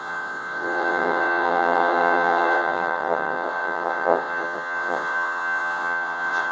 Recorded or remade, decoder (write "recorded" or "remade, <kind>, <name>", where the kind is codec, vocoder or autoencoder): remade, vocoder, WaveNeXt